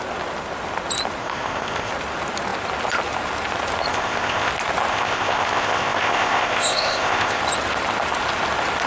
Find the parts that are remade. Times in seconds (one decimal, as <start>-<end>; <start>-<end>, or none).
1.2-1.9; 3.9-4.5; 4.9-7.4

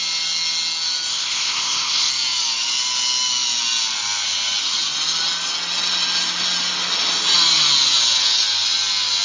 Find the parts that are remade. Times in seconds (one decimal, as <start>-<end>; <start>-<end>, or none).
1.1-2.1

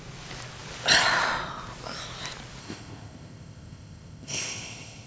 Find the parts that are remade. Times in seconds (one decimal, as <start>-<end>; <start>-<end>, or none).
2.6-5.1

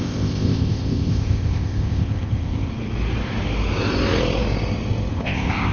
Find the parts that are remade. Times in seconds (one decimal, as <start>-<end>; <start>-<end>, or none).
0.0-2.7; 5.1-5.7

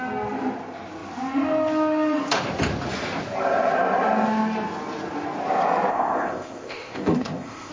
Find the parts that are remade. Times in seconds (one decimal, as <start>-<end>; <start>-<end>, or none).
5.9-7.7

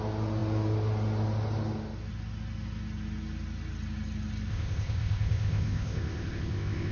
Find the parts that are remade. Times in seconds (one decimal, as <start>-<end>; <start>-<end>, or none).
4.5-6.9